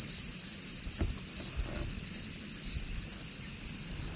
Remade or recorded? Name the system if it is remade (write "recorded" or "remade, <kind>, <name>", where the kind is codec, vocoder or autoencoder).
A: recorded